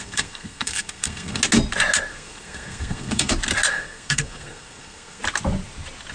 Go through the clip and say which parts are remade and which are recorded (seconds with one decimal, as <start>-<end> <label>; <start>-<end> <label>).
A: 0.0-1.4 remade; 1.4-2.1 recorded; 2.1-3.3 remade; 3.3-3.7 recorded; 3.7-5.2 remade; 5.2-6.1 recorded